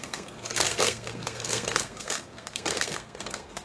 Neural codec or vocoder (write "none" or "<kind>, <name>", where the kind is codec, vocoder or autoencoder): codec, SNAC